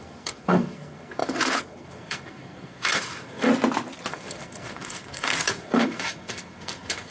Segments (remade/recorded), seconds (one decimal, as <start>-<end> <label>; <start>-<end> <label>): 0.0-3.5 remade; 3.5-4.1 recorded; 4.1-7.1 remade